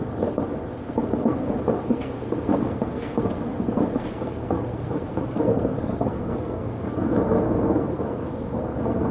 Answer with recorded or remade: remade